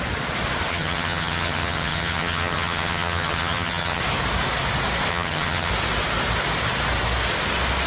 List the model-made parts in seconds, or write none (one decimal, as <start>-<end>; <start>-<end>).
0.7-4.0; 5.1-5.7